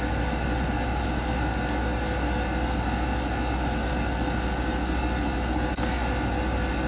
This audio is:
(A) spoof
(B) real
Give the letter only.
B